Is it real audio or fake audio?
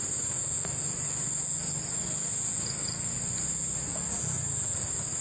real